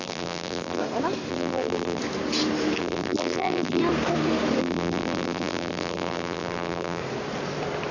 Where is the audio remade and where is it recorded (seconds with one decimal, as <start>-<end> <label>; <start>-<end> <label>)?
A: 0.0-0.8 remade; 0.8-1.3 recorded; 1.3-2.0 remade; 2.0-2.8 recorded; 2.8-3.8 remade; 3.8-4.6 recorded; 4.6-7.0 remade; 7.0-7.9 recorded